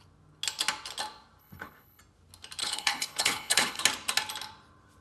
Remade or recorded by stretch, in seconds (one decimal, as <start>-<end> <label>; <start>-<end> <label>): 0.0-1.4 recorded; 1.4-2.0 remade; 2.0-2.6 recorded; 2.6-3.8 remade; 3.8-5.0 recorded